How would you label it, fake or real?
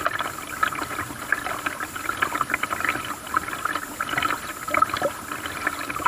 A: real